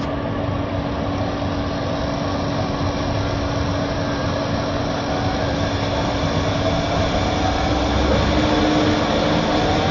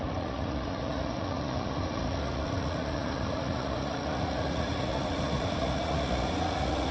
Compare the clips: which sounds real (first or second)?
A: first